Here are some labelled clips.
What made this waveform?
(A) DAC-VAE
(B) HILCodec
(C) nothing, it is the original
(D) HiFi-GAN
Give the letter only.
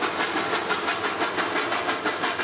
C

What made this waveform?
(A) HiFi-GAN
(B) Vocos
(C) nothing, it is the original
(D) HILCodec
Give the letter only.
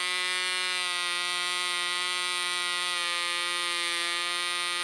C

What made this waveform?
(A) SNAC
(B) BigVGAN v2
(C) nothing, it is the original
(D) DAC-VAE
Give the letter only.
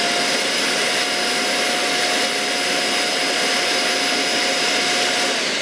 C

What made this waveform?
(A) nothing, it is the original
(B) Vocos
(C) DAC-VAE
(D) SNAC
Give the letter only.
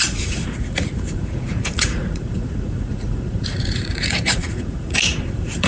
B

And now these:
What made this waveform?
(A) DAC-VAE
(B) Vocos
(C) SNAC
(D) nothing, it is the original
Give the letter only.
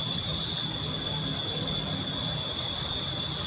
D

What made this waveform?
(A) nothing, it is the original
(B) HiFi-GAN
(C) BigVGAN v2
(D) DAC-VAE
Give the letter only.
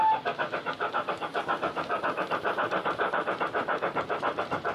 C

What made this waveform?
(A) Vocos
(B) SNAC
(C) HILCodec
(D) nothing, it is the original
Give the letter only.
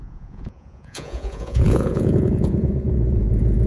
A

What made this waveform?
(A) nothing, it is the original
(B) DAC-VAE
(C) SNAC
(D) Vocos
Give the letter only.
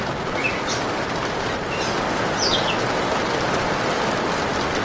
A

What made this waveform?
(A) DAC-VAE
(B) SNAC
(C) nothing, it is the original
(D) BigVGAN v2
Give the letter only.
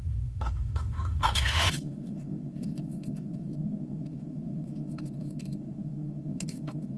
A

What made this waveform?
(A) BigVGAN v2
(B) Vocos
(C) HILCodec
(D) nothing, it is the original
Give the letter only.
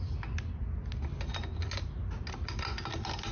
D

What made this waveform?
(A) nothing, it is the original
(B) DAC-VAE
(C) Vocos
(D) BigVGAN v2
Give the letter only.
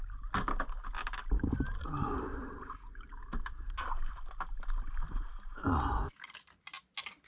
A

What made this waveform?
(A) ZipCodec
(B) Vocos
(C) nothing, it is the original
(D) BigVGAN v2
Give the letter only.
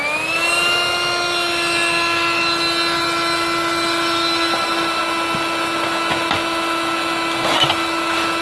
C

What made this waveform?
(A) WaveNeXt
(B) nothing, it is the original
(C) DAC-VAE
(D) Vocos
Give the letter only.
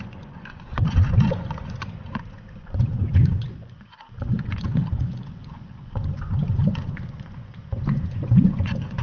D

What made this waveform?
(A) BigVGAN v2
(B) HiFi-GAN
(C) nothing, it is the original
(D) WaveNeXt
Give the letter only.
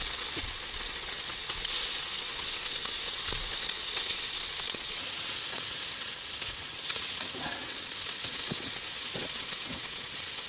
D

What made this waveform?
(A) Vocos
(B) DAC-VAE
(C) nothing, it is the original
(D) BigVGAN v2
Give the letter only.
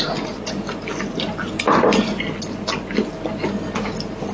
C